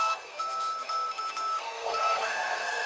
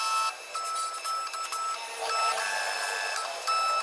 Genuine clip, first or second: second